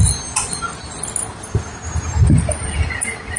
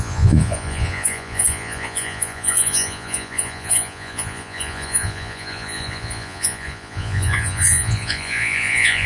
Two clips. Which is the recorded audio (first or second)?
first